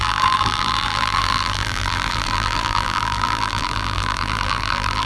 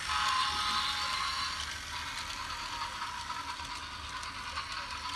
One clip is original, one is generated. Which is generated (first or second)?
first